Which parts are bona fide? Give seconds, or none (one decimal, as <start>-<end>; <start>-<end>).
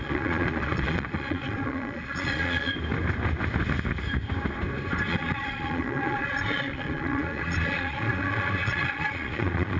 2.7-5.1